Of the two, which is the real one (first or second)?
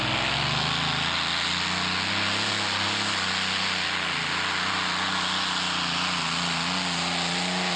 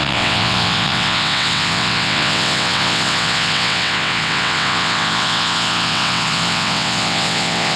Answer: first